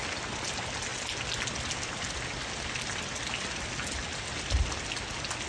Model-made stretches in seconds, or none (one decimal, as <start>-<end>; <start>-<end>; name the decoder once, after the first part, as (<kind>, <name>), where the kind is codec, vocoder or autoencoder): none